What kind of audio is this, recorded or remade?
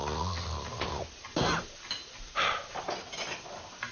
recorded